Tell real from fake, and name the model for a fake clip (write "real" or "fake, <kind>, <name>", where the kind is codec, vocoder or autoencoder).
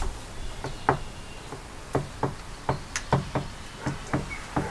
real